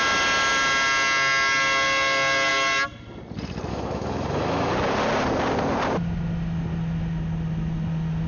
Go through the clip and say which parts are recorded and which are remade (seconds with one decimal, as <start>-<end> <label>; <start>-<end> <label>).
0.0-3.7 recorded; 3.7-4.7 remade; 4.7-8.3 recorded